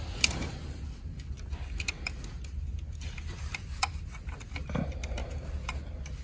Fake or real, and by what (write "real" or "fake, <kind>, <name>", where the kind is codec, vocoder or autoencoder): real